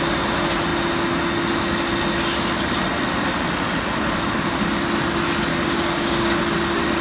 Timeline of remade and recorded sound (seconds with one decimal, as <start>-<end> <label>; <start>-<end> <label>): 0.0-5.5 recorded; 5.5-6.4 remade; 6.4-7.0 recorded